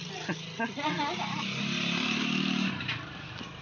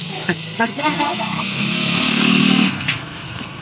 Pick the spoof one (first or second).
second